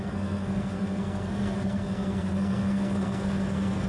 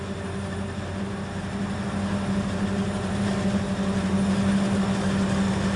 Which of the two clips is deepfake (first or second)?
first